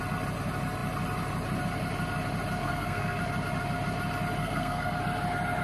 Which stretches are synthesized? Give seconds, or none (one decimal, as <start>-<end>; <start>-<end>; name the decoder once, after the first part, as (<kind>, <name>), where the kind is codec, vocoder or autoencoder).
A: 2.6-3.2 (codec, SNAC); 4.4-5.0